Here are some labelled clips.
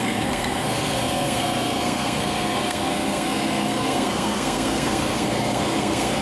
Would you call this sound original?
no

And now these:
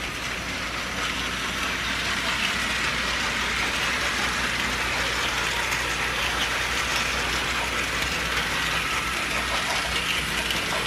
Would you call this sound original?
yes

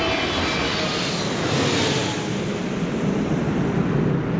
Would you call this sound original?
yes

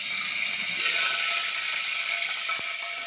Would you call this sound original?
yes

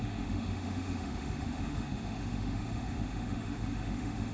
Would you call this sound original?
no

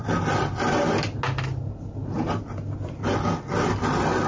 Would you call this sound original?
yes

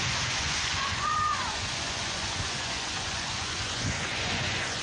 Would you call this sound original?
no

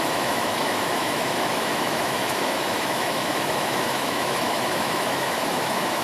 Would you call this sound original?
no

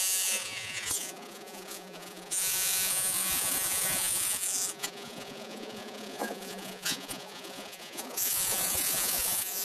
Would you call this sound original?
no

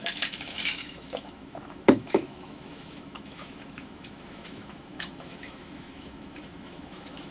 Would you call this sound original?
no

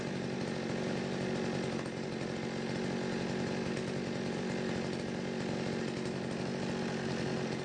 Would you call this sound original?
yes